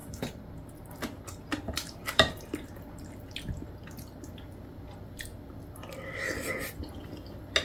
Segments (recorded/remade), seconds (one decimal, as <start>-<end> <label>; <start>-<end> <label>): 0.0-0.5 remade; 0.5-2.0 recorded; 2.0-2.7 remade; 2.7-7.6 recorded